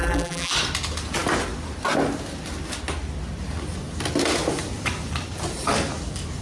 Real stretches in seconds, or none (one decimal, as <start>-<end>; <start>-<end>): 0.5-6.4